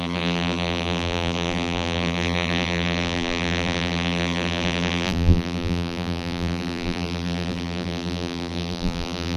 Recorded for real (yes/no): no